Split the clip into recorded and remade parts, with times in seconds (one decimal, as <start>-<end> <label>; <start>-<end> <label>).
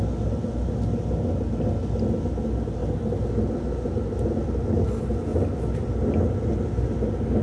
0.0-7.4 recorded